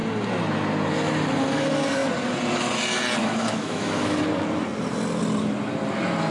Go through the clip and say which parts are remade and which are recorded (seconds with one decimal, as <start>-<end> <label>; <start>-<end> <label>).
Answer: 0.0-3.2 recorded; 3.2-4.2 remade; 4.2-6.3 recorded